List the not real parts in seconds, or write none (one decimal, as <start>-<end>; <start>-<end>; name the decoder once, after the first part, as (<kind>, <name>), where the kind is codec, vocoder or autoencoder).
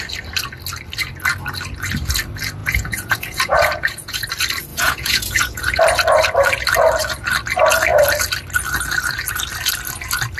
2.6-4.3 (vocoder, Vocos); 4.7-5.8